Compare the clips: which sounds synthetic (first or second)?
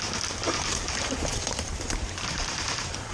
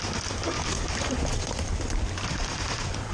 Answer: first